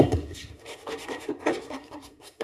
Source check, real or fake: fake